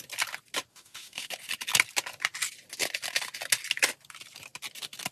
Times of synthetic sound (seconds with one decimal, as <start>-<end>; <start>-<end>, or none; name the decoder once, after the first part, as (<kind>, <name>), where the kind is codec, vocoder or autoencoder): 0.7-1.3 (autoencoder, DAC-VAE)